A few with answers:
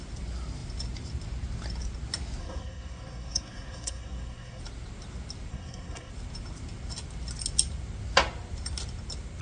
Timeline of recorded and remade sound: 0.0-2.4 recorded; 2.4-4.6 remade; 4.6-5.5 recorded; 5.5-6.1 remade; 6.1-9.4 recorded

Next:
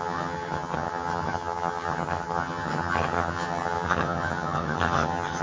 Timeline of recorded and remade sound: 0.0-5.4 remade

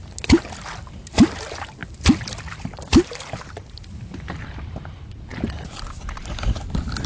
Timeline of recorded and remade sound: 0.0-7.1 recorded

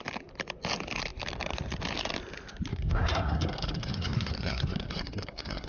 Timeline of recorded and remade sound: 0.0-2.7 recorded; 2.7-5.7 remade

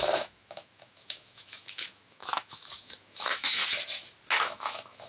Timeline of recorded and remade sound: 0.0-3.6 remade; 3.6-4.4 recorded; 4.4-5.1 remade